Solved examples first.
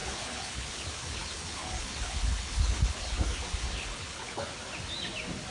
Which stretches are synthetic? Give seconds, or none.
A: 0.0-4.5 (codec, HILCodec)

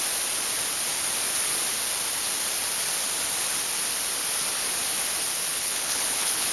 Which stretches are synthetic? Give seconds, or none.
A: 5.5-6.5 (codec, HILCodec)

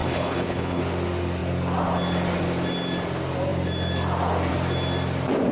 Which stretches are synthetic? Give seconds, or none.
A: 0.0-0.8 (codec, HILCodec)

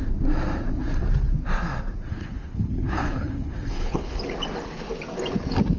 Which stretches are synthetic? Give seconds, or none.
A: 2.1-4.2 (codec, HILCodec)

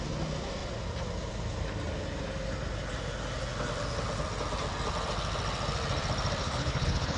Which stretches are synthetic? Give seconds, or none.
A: 6.4-7.2 (codec, HILCodec)